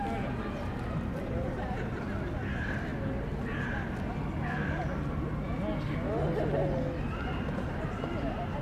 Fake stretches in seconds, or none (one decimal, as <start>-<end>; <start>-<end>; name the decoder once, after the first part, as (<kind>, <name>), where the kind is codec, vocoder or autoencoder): none